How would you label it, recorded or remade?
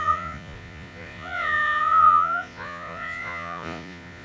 remade